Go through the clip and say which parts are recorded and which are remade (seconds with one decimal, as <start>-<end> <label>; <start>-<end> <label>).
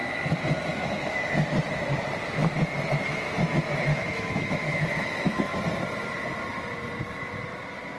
0.0-0.7 recorded; 0.7-1.2 remade; 1.2-3.9 recorded; 3.9-5.6 remade; 5.6-8.0 recorded